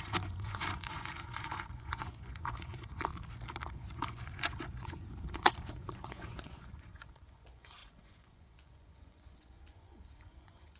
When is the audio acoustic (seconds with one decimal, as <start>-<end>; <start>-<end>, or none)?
3.1-3.7